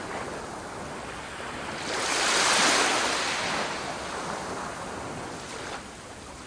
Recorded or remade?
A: recorded